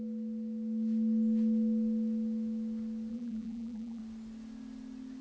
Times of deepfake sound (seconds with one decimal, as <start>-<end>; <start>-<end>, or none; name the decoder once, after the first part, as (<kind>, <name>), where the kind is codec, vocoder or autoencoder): 3.1-4.0 (vocoder, BigVGAN v2)